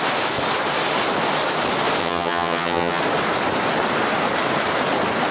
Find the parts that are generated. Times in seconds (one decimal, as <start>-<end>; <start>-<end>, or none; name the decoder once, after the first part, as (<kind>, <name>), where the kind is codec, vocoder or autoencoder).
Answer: 2.0-3.0 (vocoder, HiFi-GAN)

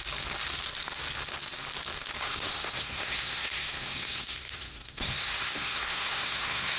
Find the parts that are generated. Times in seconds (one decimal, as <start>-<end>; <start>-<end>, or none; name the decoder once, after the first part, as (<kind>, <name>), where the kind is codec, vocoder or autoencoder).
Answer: 2.2-6.8 (codec, SNAC)

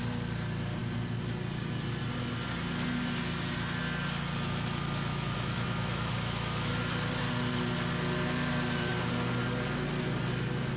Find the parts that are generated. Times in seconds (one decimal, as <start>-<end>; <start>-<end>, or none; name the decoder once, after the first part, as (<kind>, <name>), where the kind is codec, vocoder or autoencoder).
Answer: 5.1-6.7 (autoencoder, DAC-VAE)